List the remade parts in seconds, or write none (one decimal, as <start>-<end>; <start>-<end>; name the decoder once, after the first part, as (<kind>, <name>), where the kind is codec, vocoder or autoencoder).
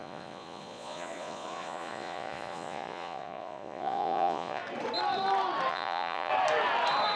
0.0-4.6 (vocoder, Vocos); 5.7-6.3